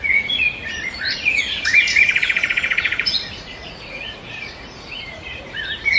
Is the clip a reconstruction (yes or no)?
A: yes